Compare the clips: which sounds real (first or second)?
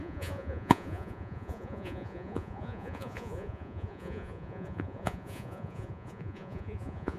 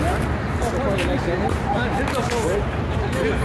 second